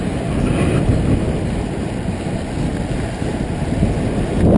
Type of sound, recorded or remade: recorded